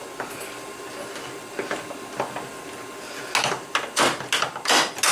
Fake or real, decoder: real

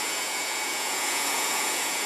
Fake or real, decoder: fake, vocoder, Vocos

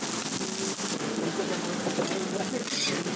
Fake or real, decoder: real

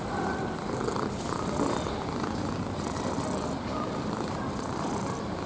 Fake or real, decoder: fake, vocoder, BigVGAN v2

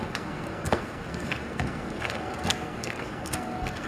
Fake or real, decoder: fake, codec, SNAC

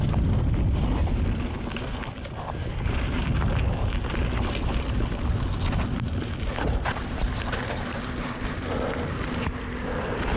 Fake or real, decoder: real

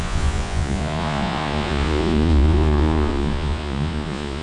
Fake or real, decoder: fake, vocoder, Vocos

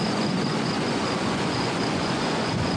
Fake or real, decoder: fake, vocoder, Vocos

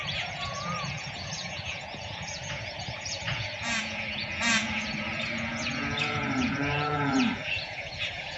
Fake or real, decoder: fake, vocoder, Vocos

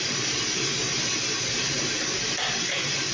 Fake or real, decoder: real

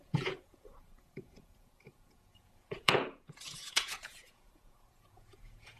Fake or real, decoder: fake, vocoder, Vocos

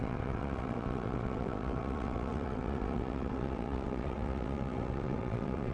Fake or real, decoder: fake, vocoder, WaveNeXt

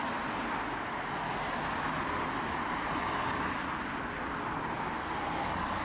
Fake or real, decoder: real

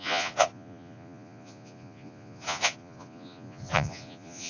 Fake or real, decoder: fake, vocoder, Vocos